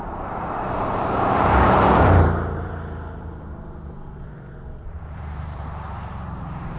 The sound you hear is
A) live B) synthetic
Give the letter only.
B